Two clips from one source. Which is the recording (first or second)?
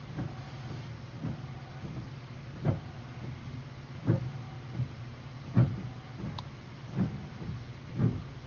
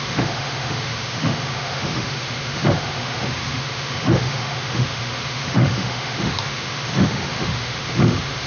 first